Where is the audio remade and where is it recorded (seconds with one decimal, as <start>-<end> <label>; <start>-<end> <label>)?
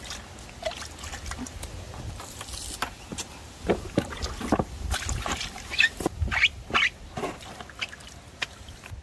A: 0.0-9.0 recorded